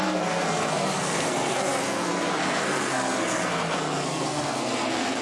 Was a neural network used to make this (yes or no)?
yes